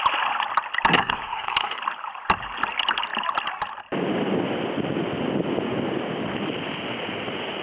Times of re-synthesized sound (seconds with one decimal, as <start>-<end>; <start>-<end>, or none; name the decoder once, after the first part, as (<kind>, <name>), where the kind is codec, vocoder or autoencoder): 0.9-1.8 (codec, SNAC)